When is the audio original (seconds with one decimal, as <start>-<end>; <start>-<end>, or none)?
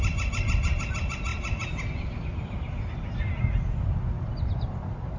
0.0-5.2